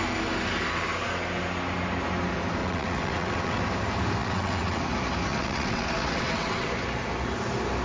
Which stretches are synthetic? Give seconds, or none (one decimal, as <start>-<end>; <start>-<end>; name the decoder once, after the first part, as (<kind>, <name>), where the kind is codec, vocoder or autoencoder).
2.6-3.6 (vocoder, WaveNeXt); 4.2-4.8; 5.3-6.7